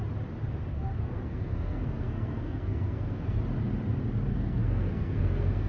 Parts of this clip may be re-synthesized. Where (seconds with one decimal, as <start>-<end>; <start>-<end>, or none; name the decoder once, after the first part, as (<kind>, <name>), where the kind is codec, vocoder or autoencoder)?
0.7-3.4 (codec, SNAC); 4.3-5.7